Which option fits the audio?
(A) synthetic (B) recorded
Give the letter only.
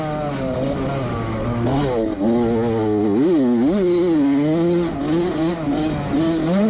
B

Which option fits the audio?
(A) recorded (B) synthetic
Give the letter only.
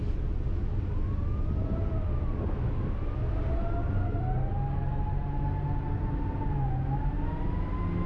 A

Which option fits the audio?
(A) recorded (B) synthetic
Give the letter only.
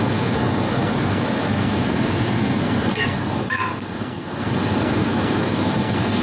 B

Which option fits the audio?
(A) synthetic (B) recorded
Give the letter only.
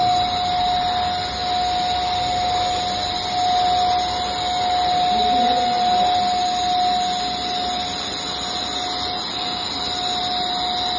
B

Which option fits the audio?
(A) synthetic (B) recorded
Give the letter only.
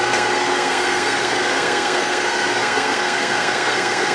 A